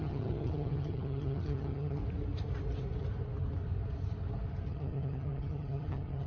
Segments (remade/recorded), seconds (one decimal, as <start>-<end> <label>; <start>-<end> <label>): 0.0-2.0 remade; 2.0-4.7 recorded; 4.7-6.3 remade